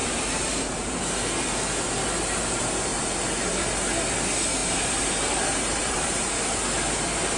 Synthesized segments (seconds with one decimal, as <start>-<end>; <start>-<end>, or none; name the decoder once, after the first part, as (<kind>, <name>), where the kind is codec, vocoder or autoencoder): 0.0-1.0 (vocoder, BigVGAN v2); 2.9-3.4; 4.6-6.4